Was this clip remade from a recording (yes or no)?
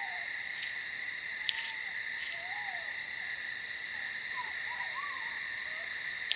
no